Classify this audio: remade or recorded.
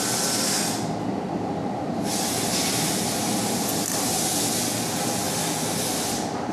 recorded